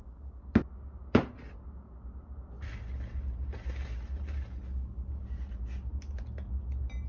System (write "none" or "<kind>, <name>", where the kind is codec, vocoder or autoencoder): none